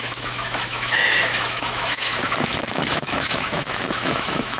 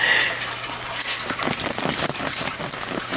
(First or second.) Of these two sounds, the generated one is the first